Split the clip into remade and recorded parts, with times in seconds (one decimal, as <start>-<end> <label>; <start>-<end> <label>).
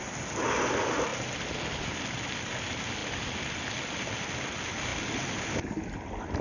0.0-6.4 recorded